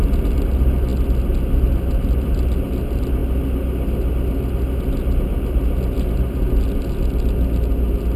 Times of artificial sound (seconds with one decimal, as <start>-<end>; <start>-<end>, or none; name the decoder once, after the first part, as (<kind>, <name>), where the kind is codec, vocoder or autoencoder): none